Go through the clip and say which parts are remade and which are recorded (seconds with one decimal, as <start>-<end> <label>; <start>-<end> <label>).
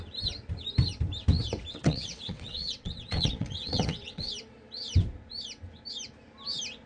0.0-1.8 recorded; 1.8-4.3 remade; 4.3-6.9 recorded